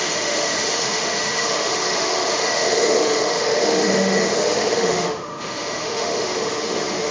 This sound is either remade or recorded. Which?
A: remade